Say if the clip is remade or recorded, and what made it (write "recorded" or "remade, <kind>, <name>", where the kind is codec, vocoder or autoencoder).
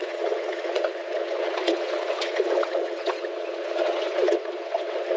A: remade, vocoder, WaveNeXt